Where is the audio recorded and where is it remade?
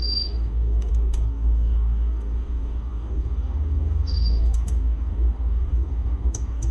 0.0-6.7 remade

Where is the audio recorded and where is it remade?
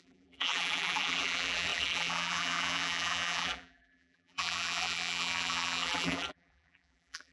0.0-7.3 remade